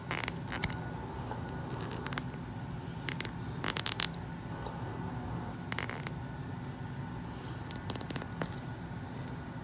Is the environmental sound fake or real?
real